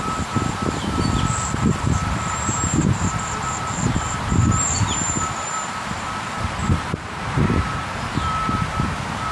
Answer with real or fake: fake